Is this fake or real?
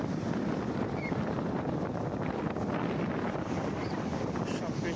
real